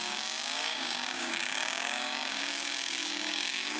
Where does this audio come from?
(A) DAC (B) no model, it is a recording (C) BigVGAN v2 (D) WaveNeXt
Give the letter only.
A